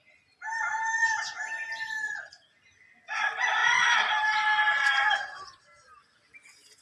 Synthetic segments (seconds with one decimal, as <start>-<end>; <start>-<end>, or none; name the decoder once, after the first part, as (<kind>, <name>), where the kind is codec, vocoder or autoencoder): none